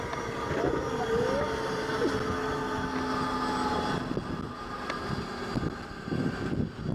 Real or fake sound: real